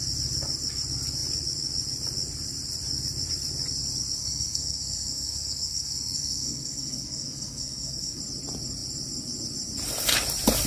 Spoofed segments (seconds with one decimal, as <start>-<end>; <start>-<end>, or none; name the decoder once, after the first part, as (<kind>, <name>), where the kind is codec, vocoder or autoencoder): 4.2-8.2 (codec, SNAC)